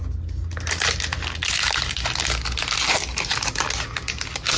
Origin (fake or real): real